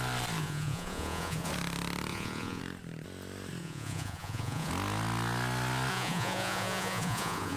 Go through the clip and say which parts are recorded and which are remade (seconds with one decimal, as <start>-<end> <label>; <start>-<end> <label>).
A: 0.0-0.4 recorded; 0.4-1.5 remade; 1.5-2.1 recorded; 2.1-2.6 remade; 2.6-3.6 recorded; 3.6-4.7 remade; 4.7-5.9 recorded; 5.9-7.6 remade